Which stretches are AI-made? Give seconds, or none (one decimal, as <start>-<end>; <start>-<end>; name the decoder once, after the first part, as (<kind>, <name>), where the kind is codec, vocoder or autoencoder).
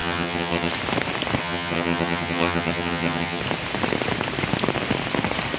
0.0-0.7 (vocoder, HiFi-GAN); 1.4-3.4